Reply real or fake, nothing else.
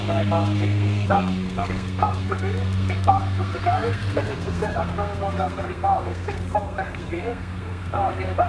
fake